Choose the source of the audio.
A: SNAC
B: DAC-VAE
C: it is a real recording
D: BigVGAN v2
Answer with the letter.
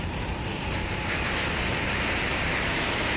D